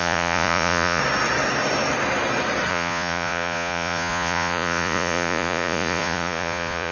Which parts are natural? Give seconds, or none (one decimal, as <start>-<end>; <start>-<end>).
1.0-2.7